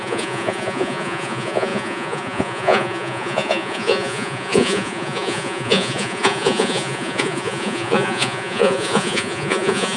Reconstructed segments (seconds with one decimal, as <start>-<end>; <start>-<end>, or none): 0.0-10.0